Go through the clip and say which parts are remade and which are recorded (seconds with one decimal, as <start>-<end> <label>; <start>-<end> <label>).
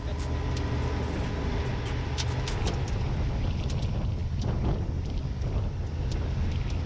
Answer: 0.0-4.2 recorded; 4.2-5.9 remade; 5.9-6.9 recorded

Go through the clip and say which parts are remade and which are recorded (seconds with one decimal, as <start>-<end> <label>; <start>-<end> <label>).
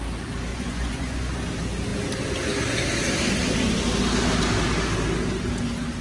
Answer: 0.0-0.5 recorded; 0.5-1.4 remade; 1.4-6.0 recorded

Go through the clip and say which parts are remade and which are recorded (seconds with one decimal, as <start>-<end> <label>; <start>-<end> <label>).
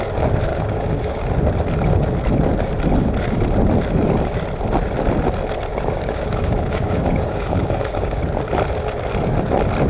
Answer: 0.0-0.5 recorded; 0.5-1.2 remade; 1.2-5.7 recorded; 5.7-8.2 remade; 8.2-9.9 recorded